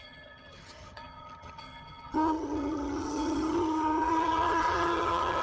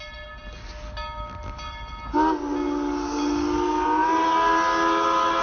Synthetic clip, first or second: first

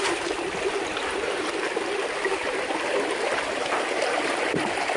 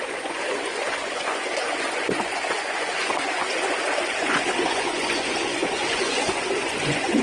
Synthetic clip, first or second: second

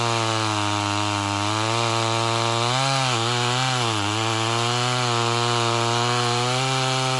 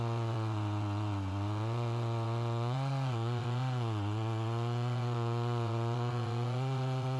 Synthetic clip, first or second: second